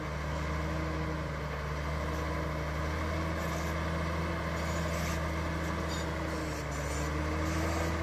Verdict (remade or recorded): recorded